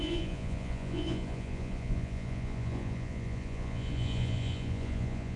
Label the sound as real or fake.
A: fake